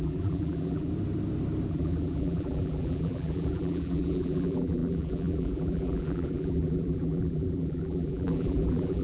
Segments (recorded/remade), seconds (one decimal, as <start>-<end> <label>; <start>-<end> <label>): 0.0-0.9 remade; 0.9-1.7 recorded; 1.7-9.0 remade